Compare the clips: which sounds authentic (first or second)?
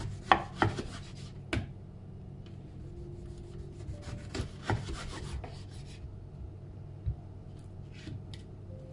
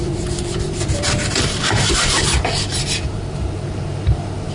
first